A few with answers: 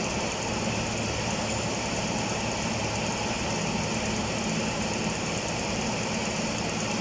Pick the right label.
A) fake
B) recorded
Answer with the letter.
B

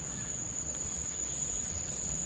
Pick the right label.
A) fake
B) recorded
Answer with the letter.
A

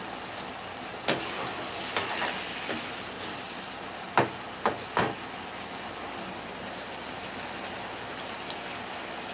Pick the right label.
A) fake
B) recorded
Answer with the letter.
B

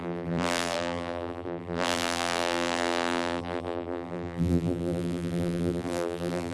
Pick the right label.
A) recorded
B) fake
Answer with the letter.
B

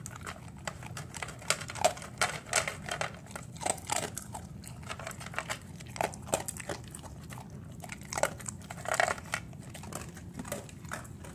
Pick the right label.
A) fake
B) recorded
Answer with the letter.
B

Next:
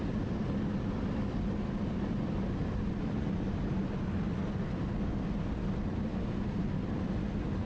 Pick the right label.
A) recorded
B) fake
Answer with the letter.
A